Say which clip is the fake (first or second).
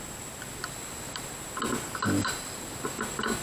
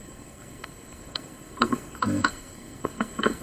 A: second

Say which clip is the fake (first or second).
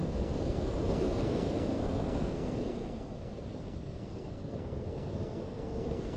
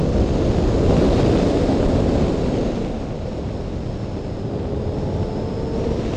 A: first